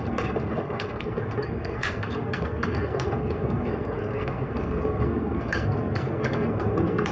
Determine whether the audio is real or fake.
fake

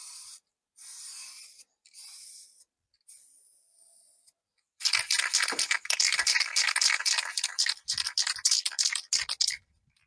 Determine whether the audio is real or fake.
real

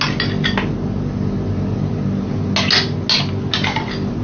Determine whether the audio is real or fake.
real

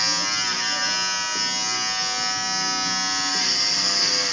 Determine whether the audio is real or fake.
real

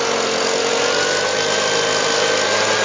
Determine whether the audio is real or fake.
real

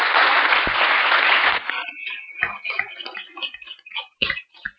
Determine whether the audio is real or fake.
fake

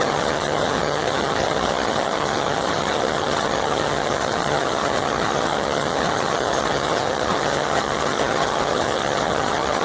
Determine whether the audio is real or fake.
fake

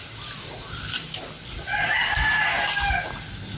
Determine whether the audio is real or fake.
real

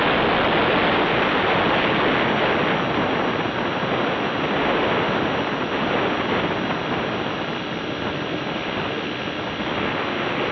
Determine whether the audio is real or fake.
real